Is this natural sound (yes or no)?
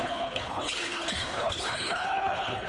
no